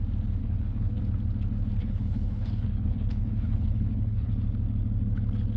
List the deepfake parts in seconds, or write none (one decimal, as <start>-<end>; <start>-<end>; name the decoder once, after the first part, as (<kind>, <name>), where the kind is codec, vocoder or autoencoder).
0.4-1.0 (codec, HILCodec); 1.8-4.3

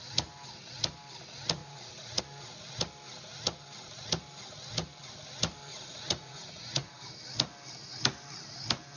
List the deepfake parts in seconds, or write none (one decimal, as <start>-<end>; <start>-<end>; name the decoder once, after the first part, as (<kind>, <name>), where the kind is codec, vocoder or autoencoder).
1.6-2.2 (vocoder, Vocos); 5.7-7.1

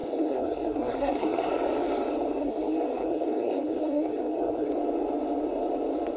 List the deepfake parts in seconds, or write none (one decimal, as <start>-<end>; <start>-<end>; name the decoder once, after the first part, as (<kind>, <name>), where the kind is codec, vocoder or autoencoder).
0.0-1.5 (codec, SNAC); 2.4-4.7